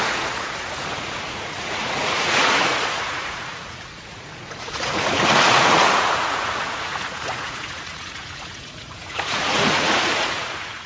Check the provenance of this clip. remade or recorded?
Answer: remade